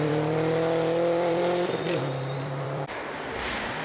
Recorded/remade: remade